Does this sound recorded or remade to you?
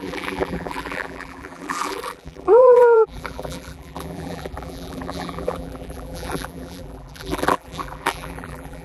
remade